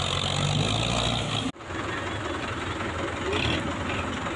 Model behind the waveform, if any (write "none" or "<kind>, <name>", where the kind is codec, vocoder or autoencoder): none